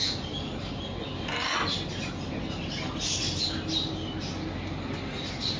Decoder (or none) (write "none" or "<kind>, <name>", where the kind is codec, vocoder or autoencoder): none